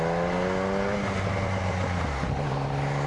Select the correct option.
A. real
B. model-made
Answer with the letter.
A